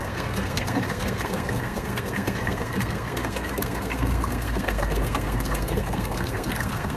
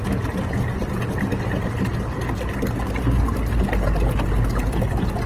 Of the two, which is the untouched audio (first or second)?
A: second